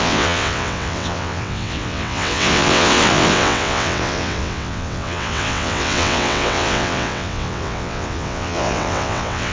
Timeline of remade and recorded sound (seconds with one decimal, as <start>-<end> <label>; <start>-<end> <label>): 0.0-9.5 remade